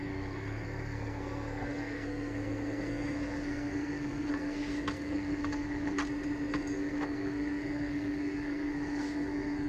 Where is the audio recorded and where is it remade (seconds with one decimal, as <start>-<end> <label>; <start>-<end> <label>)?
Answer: 0.0-6.0 remade; 6.0-6.5 recorded; 6.5-9.7 remade